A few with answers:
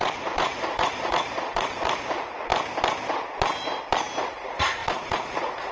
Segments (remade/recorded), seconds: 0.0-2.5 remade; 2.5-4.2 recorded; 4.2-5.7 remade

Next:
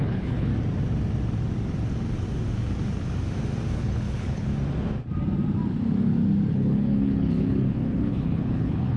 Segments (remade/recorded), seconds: 0.0-0.5 remade; 0.5-3.7 recorded; 3.7-4.5 remade; 4.5-6.5 recorded; 6.5-9.0 remade